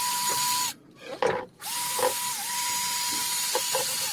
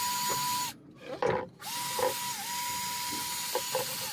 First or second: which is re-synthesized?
first